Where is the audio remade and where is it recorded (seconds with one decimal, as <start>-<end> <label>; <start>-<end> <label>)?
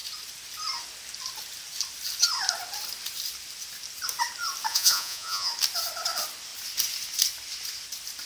0.0-4.7 recorded; 4.7-5.5 remade; 5.5-8.3 recorded